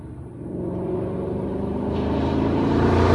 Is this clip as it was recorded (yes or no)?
no